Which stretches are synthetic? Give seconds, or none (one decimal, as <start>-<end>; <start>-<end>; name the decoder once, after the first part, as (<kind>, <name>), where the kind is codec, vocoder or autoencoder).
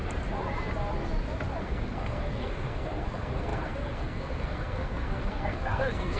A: 1.6-6.2 (codec, SNAC)